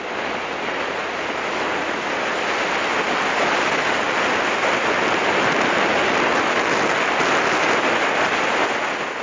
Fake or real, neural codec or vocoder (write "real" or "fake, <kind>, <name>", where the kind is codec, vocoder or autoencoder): real